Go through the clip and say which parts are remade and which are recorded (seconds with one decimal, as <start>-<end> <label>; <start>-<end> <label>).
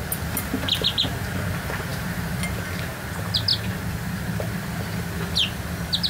0.0-1.9 recorded; 1.9-2.4 remade; 2.4-6.1 recorded